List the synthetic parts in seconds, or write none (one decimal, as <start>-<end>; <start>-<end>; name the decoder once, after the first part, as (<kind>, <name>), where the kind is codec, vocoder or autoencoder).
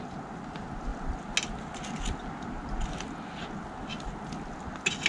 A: none